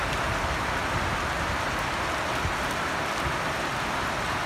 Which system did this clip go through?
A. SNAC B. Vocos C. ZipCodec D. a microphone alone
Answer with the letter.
D